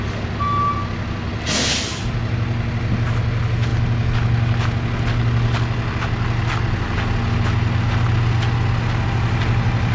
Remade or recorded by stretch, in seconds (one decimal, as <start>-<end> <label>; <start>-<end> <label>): 0.0-9.9 recorded